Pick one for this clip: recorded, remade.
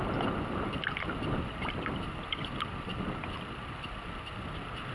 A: remade